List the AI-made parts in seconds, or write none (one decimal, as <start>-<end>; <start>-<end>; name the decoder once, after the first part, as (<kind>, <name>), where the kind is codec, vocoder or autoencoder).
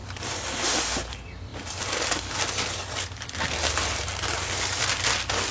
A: none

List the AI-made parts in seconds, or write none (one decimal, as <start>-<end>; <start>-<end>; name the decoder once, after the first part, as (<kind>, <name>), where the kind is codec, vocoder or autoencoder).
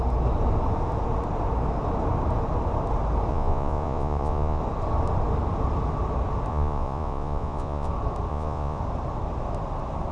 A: 3.3-4.6 (vocoder, Vocos); 6.5-7.9; 8.3-8.8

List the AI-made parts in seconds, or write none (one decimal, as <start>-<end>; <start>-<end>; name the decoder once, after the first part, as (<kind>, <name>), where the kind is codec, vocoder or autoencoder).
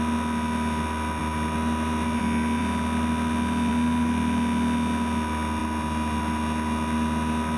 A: none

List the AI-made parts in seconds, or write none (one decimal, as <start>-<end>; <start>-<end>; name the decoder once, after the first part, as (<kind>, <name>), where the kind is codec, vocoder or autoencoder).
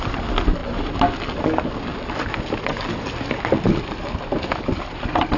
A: none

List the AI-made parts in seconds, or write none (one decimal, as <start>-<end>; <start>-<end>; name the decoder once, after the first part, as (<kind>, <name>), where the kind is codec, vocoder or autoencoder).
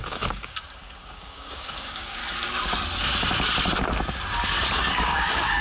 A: 0.0-2.2 (codec, DAC); 4.9-5.6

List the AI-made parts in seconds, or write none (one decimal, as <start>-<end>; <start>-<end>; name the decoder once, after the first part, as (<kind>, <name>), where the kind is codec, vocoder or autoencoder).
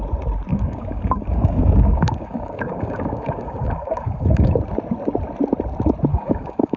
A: 0.5-4.6 (codec, DAC); 6.1-6.8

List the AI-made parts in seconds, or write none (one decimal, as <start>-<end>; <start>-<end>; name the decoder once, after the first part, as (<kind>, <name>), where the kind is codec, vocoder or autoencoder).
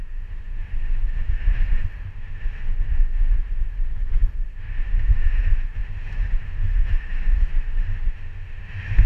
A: 0.0-9.1 (autoencoder, DAC-VAE)